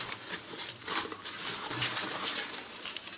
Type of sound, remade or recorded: remade